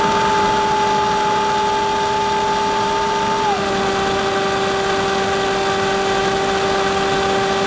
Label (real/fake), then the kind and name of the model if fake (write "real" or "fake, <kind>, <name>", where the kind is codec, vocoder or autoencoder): real